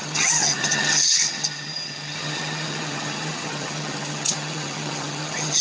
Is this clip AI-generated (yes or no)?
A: yes